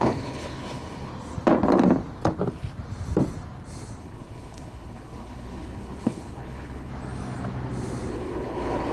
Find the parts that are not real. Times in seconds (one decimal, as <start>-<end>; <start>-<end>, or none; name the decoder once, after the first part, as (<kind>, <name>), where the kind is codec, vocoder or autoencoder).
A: 0.0-1.1 (codec, HILCodec); 4.0-6.9; 8.1-8.9